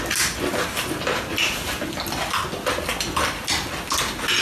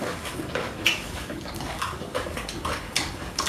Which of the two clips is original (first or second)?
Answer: first